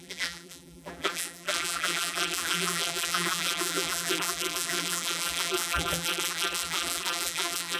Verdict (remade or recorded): remade